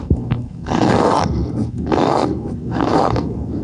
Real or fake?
fake